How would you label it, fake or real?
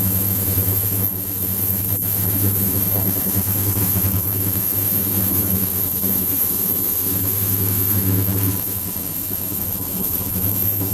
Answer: fake